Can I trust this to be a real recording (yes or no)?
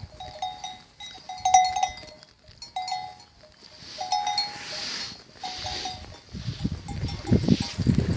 yes